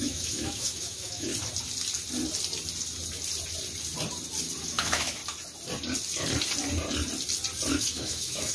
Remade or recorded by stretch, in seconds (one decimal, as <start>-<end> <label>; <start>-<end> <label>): 0.0-1.3 remade; 1.3-4.6 recorded; 4.6-5.2 remade; 5.2-7.7 recorded; 7.7-8.5 remade